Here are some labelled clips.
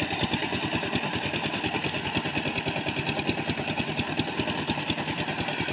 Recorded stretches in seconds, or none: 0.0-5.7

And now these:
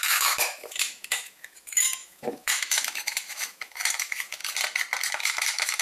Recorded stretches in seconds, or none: 4.4-5.1

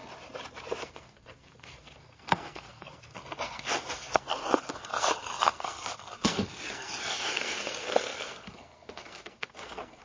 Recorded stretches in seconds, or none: 0.0-0.8

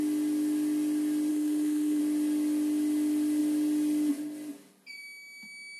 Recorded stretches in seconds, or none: 0.0-1.3; 2.0-5.8

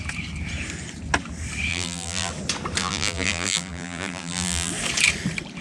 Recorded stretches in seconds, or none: 0.0-1.7; 2.3-2.8; 4.7-5.6

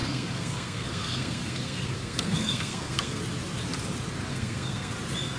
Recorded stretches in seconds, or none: 3.2-4.3; 4.9-5.4

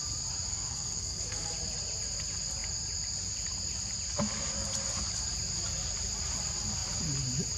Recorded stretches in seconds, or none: 0.0-0.5; 1.5-7.6

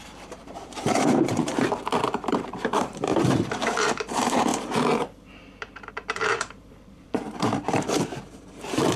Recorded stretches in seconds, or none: 1.5-2.1; 4.5-5.9